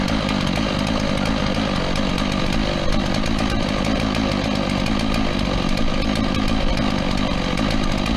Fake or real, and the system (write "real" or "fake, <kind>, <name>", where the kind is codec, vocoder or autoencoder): real